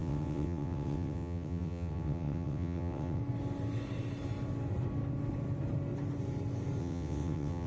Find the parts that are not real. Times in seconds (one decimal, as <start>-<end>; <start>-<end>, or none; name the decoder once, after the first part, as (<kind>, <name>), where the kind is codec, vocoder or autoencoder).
0.0-3.2 (vocoder, WaveNeXt); 6.8-7.7